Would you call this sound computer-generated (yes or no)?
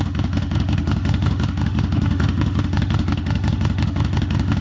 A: yes